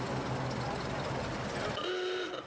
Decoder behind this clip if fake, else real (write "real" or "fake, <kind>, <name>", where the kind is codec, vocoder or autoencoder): real